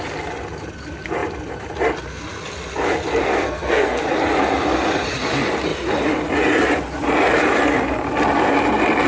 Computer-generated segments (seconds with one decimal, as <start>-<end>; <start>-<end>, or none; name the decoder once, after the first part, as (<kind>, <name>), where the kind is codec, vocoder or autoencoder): 3.2-4.0 (codec, SNAC)